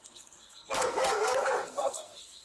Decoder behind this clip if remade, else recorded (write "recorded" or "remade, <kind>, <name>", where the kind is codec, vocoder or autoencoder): remade, codec, SNAC